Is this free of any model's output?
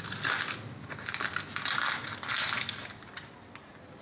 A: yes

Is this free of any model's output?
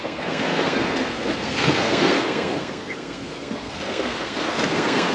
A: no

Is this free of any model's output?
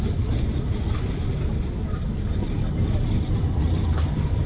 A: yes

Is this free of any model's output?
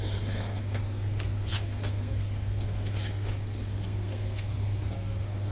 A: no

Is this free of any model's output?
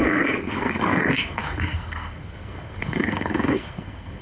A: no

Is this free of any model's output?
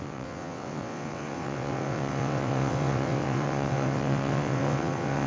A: no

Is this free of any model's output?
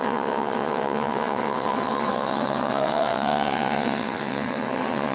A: no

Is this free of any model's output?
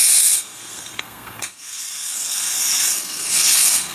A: no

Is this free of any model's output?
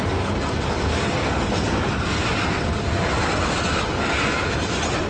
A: yes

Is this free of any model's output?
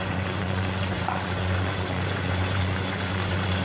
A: no